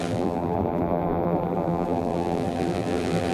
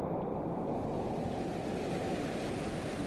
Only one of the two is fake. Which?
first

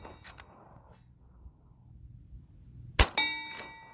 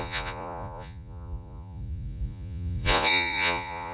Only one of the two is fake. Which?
second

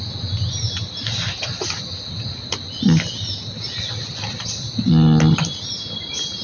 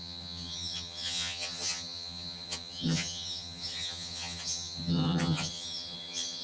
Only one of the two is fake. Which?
second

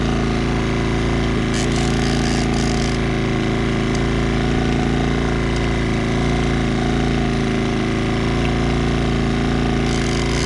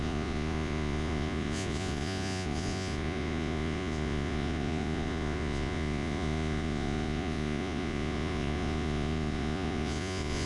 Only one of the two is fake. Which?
second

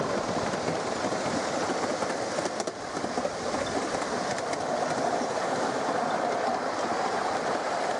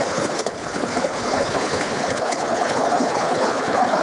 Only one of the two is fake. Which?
second